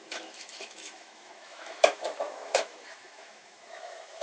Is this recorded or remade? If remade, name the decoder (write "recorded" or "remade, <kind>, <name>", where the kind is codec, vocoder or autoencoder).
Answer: remade, autoencoder, DAC-VAE